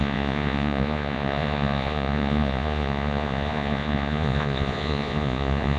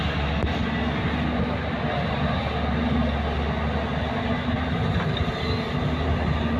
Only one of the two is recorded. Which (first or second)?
second